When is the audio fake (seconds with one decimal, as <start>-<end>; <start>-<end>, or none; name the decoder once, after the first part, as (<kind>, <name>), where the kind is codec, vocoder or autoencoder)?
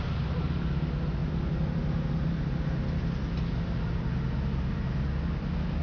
none